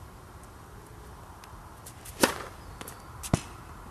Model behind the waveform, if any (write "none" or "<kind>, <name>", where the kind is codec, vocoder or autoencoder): none